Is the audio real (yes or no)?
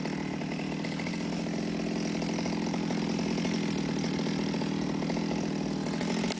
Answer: yes